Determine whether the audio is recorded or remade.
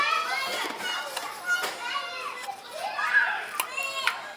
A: recorded